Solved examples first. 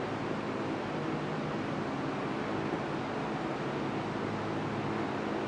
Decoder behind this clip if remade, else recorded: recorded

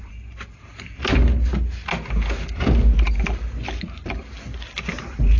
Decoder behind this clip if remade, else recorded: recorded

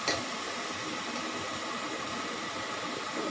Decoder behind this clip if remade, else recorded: recorded